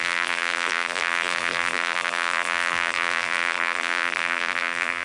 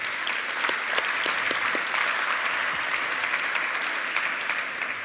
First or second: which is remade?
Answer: first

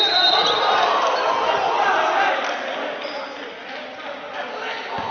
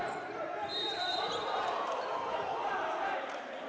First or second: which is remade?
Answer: second